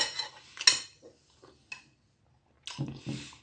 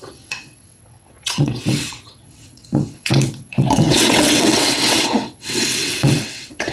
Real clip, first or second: first